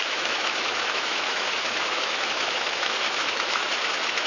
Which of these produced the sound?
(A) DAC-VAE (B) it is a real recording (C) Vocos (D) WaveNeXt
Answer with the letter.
A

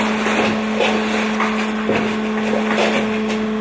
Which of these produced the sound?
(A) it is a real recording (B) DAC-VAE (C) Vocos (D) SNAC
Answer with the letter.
A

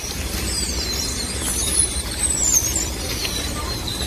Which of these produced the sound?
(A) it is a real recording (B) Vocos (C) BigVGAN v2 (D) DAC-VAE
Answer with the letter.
A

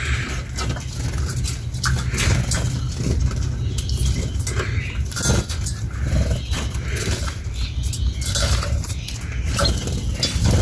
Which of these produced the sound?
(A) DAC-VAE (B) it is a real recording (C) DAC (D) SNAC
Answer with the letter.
B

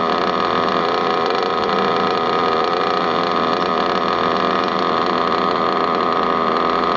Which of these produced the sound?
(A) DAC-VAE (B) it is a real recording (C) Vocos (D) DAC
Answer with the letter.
B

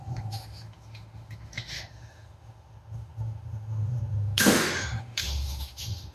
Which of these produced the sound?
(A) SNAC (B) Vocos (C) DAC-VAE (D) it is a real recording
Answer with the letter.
C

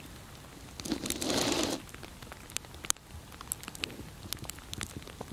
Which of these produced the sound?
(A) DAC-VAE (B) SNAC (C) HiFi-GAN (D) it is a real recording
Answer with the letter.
D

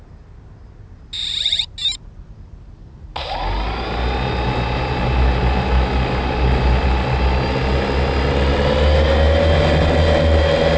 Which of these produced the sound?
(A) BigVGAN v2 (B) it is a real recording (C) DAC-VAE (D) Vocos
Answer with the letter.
B